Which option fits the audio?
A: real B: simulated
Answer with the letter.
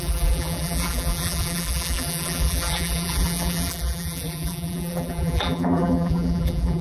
B